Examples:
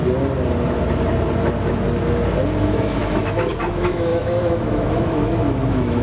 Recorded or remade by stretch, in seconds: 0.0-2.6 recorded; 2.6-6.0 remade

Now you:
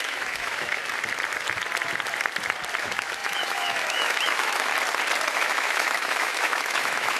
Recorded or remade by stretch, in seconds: 0.0-0.8 remade; 0.8-2.8 recorded; 2.8-4.7 remade; 4.7-5.3 recorded; 5.3-7.2 remade